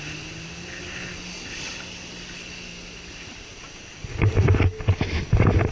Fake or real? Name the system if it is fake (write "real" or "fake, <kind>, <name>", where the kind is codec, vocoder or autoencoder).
real